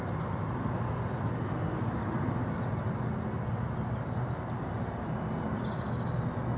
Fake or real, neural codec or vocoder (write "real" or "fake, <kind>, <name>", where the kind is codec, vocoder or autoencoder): real